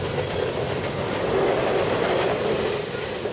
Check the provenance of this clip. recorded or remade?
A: recorded